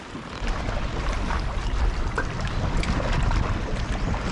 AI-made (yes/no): no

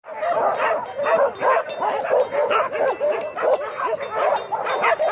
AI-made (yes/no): no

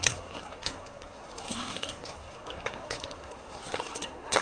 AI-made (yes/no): yes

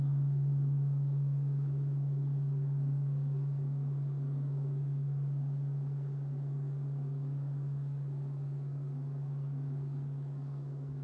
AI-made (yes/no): yes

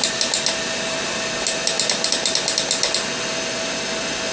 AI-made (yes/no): no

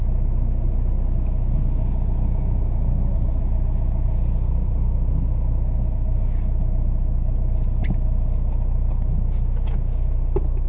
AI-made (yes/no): no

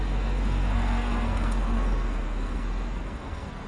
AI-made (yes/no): yes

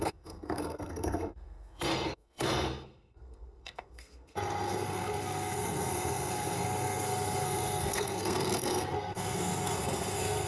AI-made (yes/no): yes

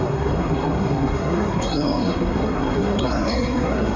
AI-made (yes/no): yes